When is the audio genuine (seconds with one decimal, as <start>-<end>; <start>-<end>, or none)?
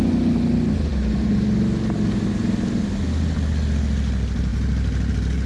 0.0-5.5